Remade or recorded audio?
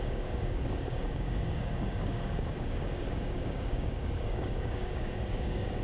remade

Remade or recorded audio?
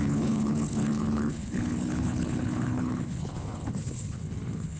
remade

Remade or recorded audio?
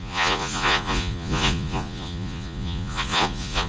remade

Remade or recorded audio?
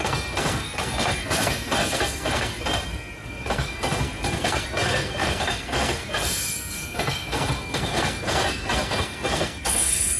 remade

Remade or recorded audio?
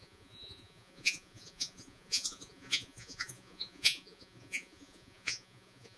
remade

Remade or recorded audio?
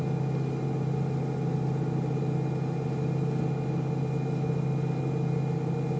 recorded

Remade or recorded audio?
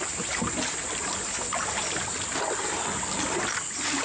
recorded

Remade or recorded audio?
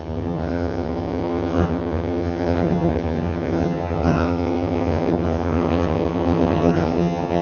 remade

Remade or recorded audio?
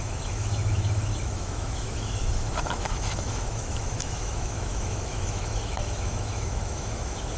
remade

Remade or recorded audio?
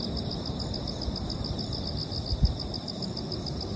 recorded